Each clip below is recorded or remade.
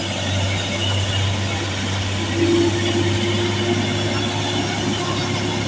recorded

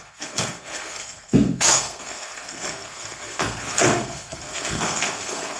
remade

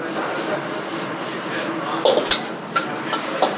recorded